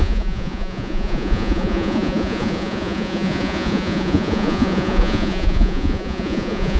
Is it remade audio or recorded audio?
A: remade